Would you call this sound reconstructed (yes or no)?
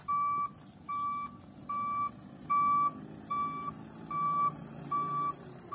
no